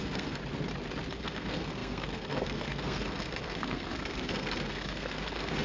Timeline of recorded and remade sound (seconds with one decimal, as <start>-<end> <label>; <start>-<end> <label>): 0.0-0.4 remade; 0.4-1.2 recorded; 1.2-5.6 remade